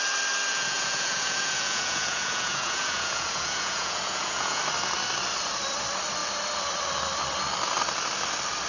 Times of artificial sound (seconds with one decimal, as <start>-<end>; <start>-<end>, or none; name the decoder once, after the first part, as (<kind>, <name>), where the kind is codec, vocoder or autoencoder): 0.5-4.6 (vocoder, Vocos)